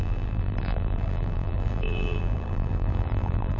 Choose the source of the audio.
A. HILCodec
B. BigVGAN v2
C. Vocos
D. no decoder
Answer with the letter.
B